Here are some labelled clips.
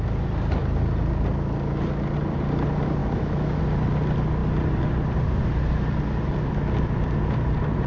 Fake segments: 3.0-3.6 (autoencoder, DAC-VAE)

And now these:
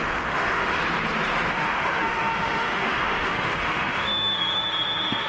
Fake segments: 0.0-0.8 (autoencoder, DAC-VAE); 1.5-5.3